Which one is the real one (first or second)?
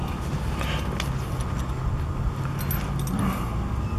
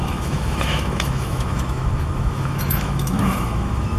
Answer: first